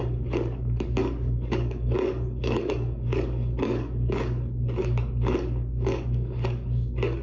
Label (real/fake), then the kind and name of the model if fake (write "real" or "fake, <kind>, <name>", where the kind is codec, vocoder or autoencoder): fake, codec, DAC